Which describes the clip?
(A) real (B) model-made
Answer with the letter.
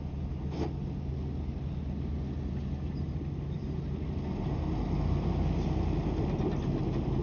A